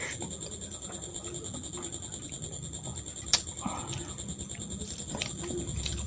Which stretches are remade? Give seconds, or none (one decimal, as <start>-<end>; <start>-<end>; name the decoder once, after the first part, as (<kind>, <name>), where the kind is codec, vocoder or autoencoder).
none